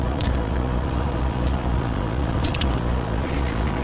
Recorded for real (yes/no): no